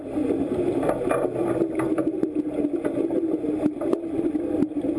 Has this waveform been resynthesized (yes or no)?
no